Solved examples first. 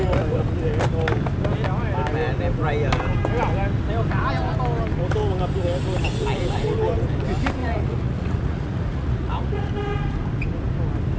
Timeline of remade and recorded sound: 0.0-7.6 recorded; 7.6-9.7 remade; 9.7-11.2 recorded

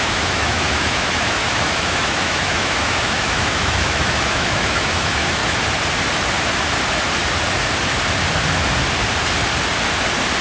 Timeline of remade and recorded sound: 0.0-5.4 remade; 5.4-10.4 recorded